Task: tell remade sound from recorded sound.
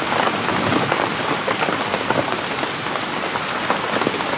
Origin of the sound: recorded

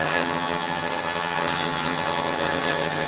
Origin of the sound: remade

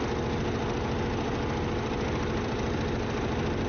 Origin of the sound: recorded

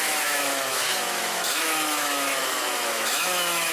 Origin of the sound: remade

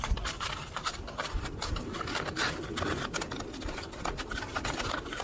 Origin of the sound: recorded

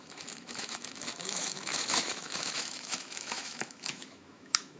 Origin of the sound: remade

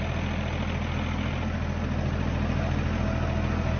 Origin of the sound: recorded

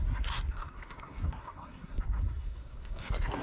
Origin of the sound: remade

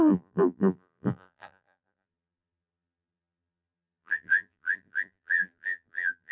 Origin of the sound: remade